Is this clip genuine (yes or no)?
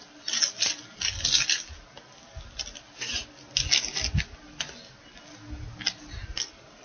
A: yes